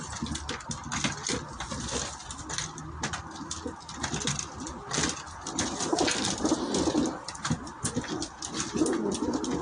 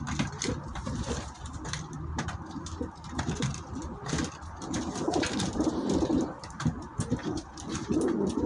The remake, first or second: second